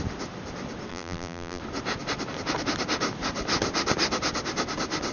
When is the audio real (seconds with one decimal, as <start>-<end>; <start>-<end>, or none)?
0.0-0.9; 1.6-5.1